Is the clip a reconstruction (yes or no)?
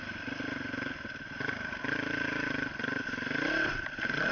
no